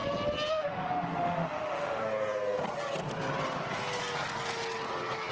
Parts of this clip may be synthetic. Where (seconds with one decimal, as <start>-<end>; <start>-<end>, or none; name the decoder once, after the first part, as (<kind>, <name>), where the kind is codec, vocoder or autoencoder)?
0.5-2.0 (autoencoder, DAC-VAE)